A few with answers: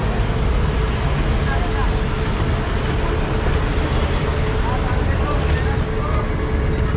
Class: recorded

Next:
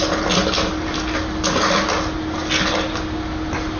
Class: recorded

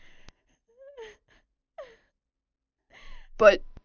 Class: recorded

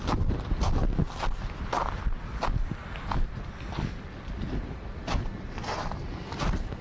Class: recorded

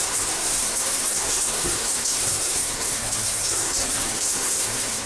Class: remade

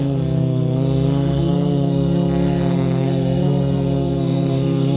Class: remade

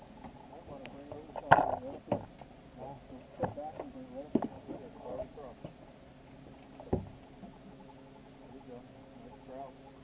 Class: recorded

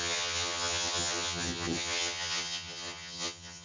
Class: remade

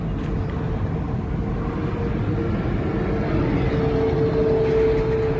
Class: recorded